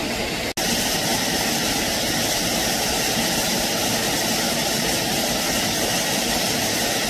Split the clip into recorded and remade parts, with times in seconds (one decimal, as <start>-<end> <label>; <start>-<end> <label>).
0.0-7.1 recorded

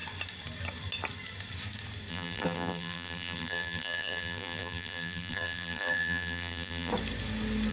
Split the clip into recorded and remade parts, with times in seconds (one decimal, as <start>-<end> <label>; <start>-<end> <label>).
0.0-2.1 recorded; 2.1-6.9 remade; 6.9-7.7 recorded

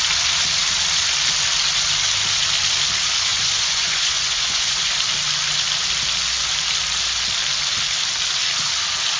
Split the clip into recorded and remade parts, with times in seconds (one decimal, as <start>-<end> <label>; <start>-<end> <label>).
0.0-3.3 recorded; 3.3-4.9 remade; 4.9-9.2 recorded

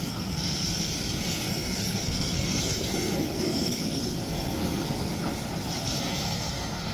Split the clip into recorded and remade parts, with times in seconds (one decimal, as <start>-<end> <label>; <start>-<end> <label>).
0.0-5.1 remade; 5.1-5.8 recorded; 5.8-6.9 remade

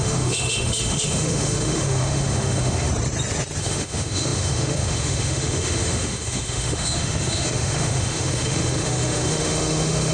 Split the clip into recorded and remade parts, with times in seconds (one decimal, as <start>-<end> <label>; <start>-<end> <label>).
0.0-2.9 remade; 2.9-3.6 recorded; 3.6-10.1 remade

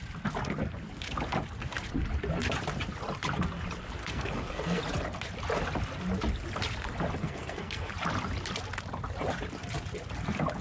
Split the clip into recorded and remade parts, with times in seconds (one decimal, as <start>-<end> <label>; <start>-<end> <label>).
0.0-4.0 recorded; 4.0-4.8 remade; 4.8-7.2 recorded; 7.2-7.9 remade; 7.9-10.6 recorded

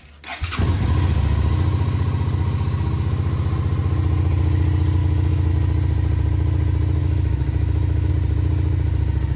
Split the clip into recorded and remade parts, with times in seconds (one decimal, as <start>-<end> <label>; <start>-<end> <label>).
0.0-5.0 recorded; 5.0-5.5 remade; 5.5-7.0 recorded; 7.0-8.1 remade; 8.1-9.4 recorded